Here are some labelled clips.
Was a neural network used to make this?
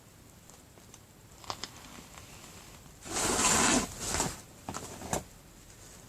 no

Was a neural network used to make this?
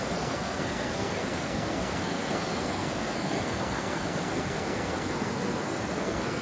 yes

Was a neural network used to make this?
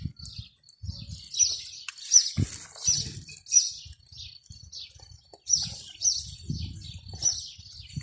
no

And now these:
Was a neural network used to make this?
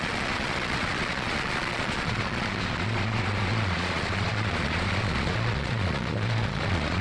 yes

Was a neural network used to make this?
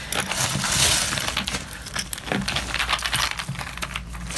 no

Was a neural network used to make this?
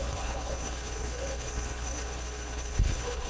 yes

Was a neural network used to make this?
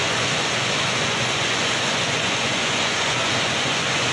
yes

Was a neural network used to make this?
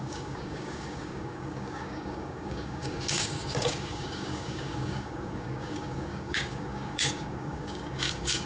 yes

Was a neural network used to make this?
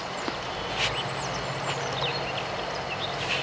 no